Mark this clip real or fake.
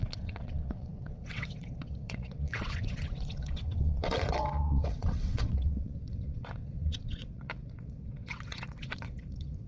fake